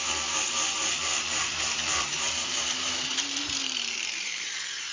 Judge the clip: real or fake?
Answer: fake